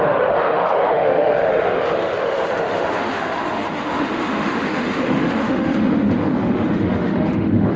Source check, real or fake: fake